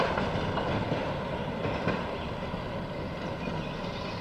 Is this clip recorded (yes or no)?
yes